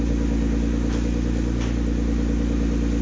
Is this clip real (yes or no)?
yes